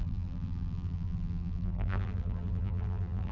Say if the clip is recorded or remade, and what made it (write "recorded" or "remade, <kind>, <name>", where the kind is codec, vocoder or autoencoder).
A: remade, vocoder, BigVGAN v2